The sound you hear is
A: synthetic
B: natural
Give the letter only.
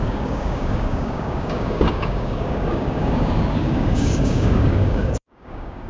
A